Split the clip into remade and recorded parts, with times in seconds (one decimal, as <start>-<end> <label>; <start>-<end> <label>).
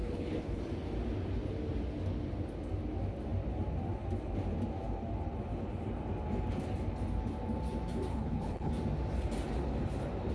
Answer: 0.0-0.6 remade; 0.6-8.1 recorded; 8.1-8.7 remade; 8.7-10.3 recorded